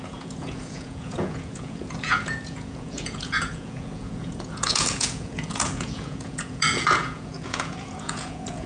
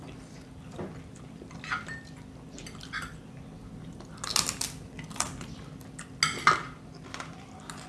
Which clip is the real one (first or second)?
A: second